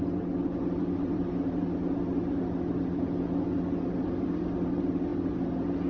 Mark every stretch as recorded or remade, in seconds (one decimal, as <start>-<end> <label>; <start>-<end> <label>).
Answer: 0.0-5.9 recorded